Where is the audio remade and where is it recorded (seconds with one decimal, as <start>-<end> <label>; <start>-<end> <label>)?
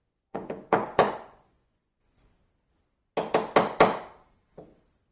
0.0-2.3 remade; 2.3-5.1 recorded